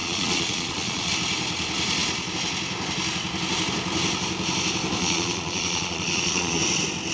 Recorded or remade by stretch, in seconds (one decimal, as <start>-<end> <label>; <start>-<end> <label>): 0.0-1.1 remade; 1.1-5.0 recorded; 5.0-6.6 remade; 6.6-7.1 recorded